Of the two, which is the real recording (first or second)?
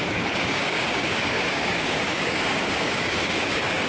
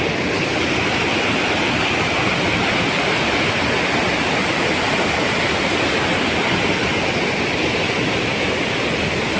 second